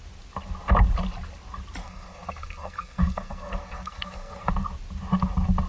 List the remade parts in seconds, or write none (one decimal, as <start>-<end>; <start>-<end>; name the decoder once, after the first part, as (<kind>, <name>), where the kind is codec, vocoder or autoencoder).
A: 1.8-4.5 (codec, SNAC)